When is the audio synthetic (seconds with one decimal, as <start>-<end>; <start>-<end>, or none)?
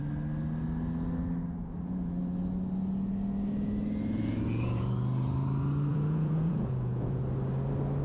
5.9-7.2